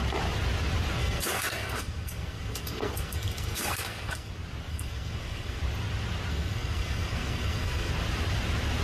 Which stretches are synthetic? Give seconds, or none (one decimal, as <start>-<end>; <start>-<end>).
1.0-4.3; 4.7-5.6; 6.3-7.9